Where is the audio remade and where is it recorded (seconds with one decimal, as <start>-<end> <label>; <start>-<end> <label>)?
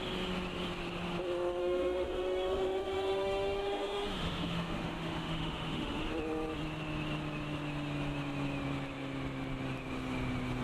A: 0.0-1.6 recorded; 1.6-6.1 remade; 6.1-10.6 recorded